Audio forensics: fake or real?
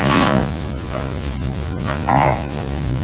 fake